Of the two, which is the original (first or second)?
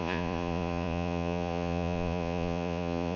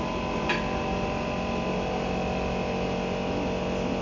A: second